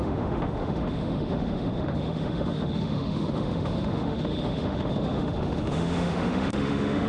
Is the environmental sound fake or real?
fake